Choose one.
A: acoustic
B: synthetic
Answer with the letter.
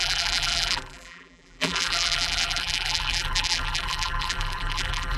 B